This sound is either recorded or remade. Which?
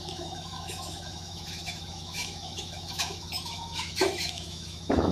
remade